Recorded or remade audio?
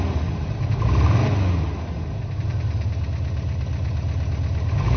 recorded